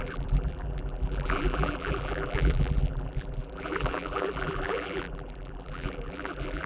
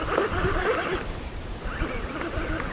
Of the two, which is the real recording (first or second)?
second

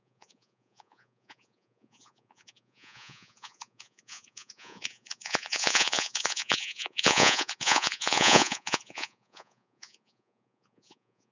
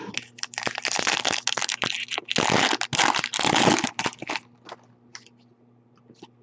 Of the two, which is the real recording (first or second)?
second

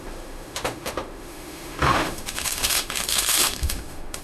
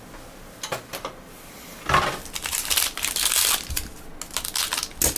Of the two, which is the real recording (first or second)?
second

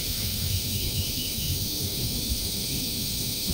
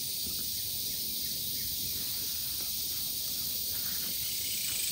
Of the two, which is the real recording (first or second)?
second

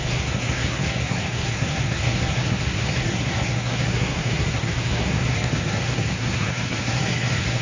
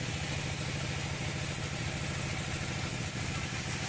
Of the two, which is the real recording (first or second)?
second